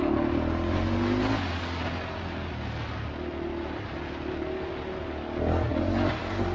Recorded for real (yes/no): yes